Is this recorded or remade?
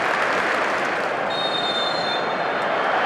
recorded